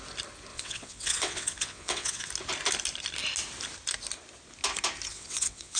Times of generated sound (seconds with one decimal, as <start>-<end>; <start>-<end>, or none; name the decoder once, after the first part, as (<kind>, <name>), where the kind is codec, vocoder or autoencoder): 0.5-2.3 (vocoder, WaveNeXt); 5.1-5.8